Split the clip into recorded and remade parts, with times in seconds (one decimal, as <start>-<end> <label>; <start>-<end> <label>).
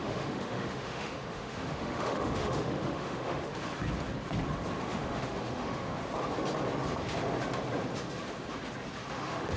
0.0-3.7 remade; 3.7-4.8 recorded; 4.8-6.0 remade; 6.0-9.1 recorded; 9.1-9.6 remade